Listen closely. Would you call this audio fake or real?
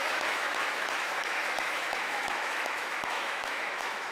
fake